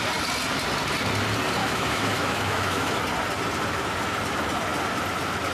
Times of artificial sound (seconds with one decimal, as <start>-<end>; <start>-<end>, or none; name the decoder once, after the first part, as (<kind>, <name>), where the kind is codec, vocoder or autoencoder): 1.6-3.0 (autoencoder, DAC-VAE)